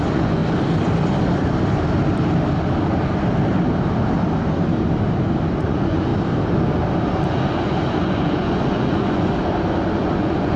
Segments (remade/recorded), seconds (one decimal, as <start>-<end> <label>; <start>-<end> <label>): 0.0-0.4 remade; 0.4-5.6 recorded; 5.6-6.1 remade; 6.1-7.2 recorded; 7.2-9.3 remade; 9.3-10.0 recorded; 10.0-10.6 remade